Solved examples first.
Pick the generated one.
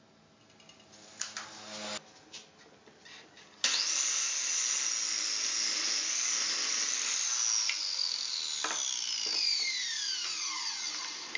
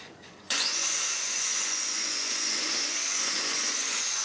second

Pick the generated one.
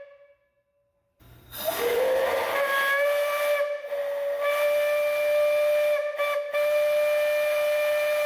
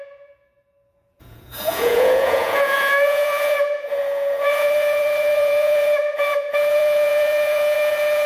second